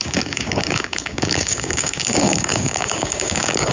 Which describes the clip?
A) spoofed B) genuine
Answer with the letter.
A